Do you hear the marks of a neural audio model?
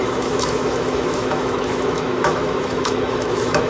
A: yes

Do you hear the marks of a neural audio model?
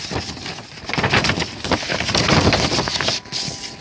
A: no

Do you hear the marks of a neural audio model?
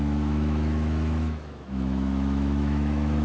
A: yes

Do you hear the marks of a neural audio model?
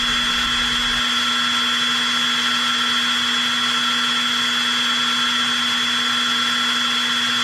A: no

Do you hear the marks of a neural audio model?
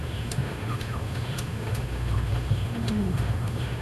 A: yes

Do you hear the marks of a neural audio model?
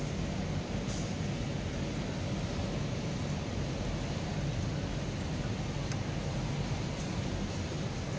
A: no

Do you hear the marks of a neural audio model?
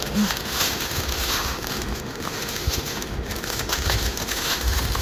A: yes